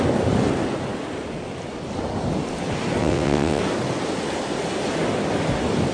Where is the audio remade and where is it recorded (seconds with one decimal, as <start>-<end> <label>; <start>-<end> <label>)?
0.0-3.0 recorded; 3.0-3.6 remade; 3.6-5.9 recorded